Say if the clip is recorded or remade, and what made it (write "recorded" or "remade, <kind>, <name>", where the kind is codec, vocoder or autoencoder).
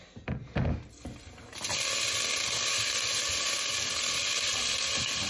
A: recorded